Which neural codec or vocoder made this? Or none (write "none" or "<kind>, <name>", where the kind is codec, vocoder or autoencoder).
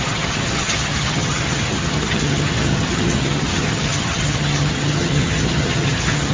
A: vocoder, HiFi-GAN